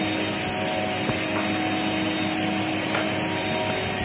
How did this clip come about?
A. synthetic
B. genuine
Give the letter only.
B